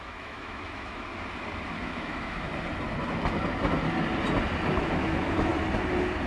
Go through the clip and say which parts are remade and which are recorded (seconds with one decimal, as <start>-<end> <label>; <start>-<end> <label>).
0.0-1.1 remade; 1.1-1.8 recorded; 1.8-2.5 remade; 2.5-4.8 recorded; 4.8-5.5 remade; 5.5-6.3 recorded